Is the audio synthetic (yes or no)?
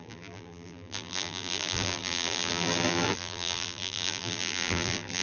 yes